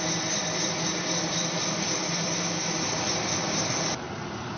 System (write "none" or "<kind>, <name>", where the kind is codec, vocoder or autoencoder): none